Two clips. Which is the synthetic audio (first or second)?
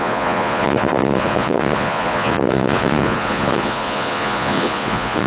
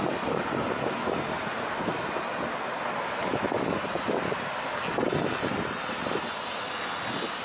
first